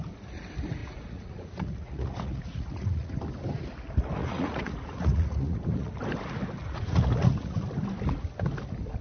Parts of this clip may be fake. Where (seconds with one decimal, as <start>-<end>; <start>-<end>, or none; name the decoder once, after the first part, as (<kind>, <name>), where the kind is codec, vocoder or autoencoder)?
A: 0.8-3.1 (vocoder, Vocos); 4.2-5.9; 6.6-7.6